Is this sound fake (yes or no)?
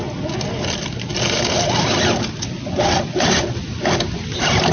no